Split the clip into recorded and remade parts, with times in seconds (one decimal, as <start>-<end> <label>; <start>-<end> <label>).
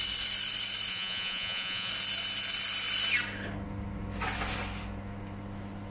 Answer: 0.0-0.9 recorded; 0.9-1.9 remade; 1.9-5.9 recorded